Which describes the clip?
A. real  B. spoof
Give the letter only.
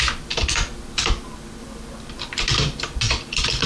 B